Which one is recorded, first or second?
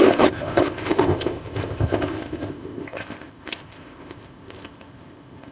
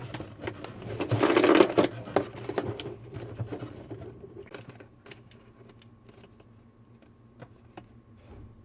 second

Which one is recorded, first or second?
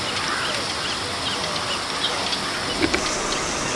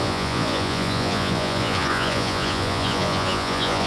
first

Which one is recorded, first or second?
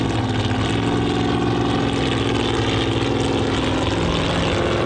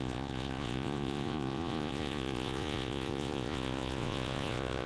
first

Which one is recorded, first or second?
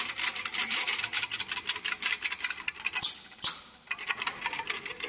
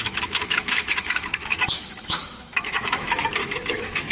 first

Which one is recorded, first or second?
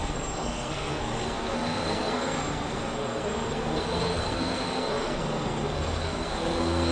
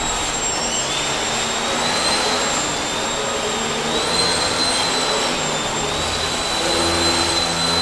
second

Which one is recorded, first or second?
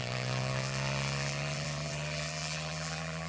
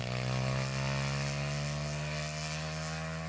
second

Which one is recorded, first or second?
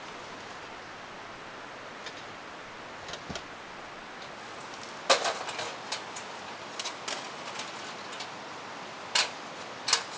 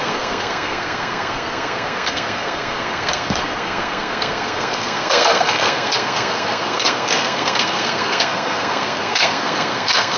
first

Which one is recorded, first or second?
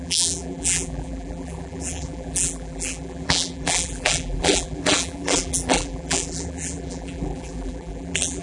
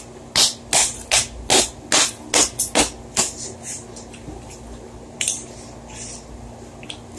second